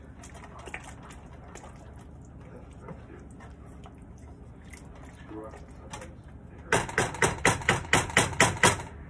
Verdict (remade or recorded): recorded